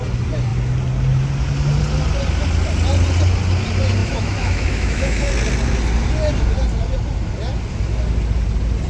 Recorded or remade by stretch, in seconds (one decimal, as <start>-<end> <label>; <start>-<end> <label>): 0.0-4.0 recorded; 4.0-5.3 remade; 5.3-8.9 recorded